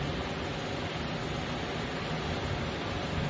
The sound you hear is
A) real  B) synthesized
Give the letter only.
A